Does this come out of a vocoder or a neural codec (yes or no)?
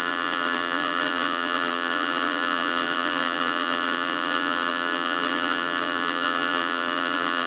yes